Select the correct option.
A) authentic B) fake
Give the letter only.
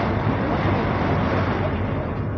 A